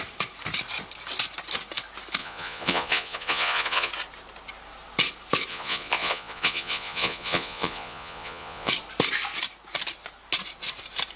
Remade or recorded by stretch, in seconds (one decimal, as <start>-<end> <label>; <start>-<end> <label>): 0.0-2.2 recorded; 2.2-3.9 remade; 3.9-5.5 recorded; 5.5-8.7 remade; 8.7-11.2 recorded